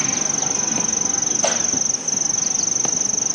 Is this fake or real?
real